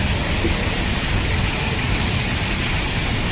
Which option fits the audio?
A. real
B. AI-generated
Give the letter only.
A